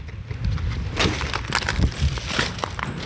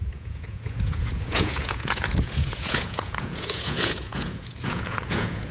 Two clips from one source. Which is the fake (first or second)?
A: second